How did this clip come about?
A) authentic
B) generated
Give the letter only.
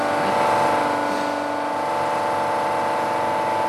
A